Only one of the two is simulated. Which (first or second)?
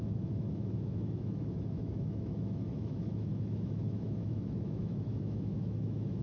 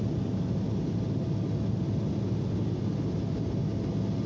first